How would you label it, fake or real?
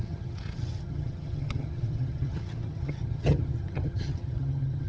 fake